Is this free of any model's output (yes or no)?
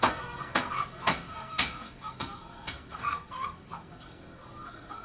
no